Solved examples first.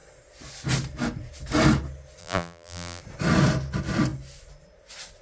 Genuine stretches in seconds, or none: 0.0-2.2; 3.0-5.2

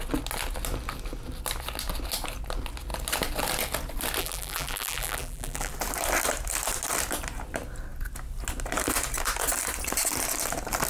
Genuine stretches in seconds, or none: 0.0-4.2; 5.7-10.9

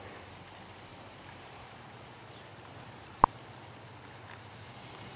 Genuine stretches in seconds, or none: 0.0-0.9; 3.2-5.2

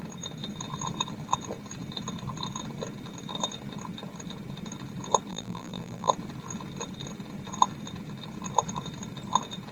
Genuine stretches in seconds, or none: 0.0-5.3; 6.1-9.7

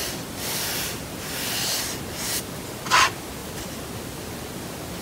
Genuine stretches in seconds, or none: 1.1-5.0